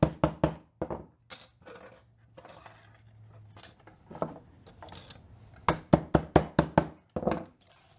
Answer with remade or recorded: recorded